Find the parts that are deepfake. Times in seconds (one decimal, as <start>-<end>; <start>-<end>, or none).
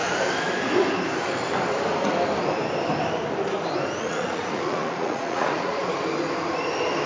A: 4.0-5.8